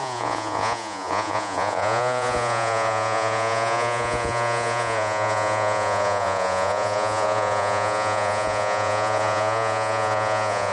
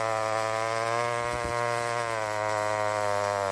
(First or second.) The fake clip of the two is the first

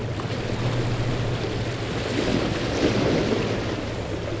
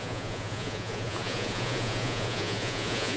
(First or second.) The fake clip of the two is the second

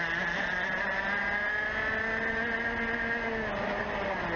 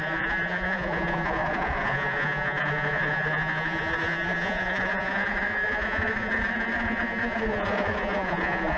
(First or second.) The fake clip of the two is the second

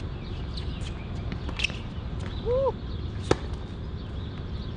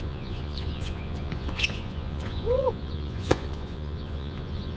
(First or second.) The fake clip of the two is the second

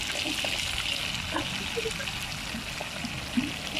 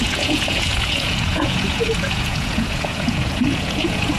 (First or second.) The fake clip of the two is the second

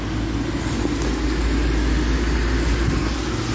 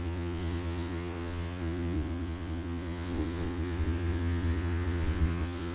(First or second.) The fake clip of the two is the second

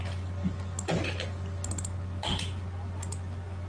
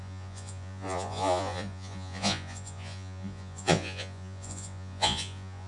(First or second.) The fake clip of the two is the second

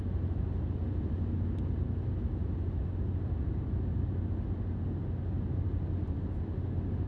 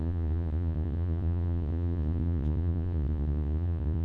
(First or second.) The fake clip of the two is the second